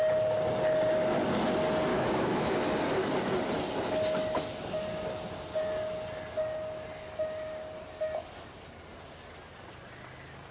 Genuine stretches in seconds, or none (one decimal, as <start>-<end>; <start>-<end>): 0.0-1.9; 2.5-10.5